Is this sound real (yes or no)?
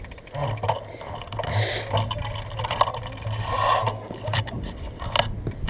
yes